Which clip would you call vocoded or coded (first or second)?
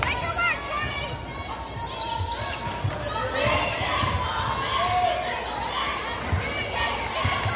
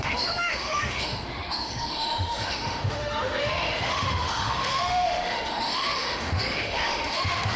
second